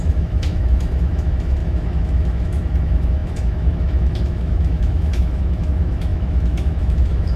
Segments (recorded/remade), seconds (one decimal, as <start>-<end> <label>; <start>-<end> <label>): 0.0-7.4 remade